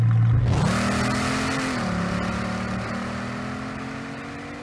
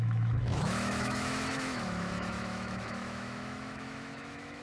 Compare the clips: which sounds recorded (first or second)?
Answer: first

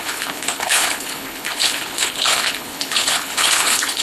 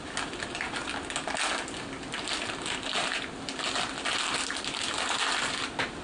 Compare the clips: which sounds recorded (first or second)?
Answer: second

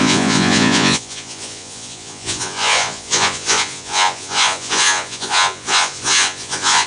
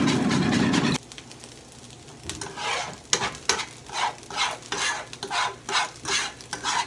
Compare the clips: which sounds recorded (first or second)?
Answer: second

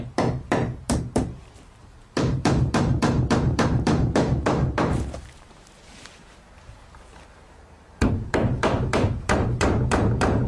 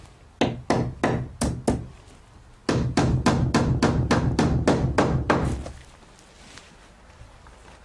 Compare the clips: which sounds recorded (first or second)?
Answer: second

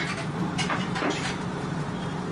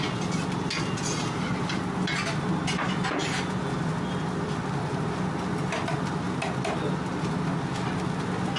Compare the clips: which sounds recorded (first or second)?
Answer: second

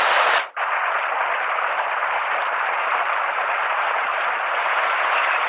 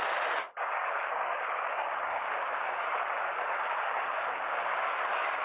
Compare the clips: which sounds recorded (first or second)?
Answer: first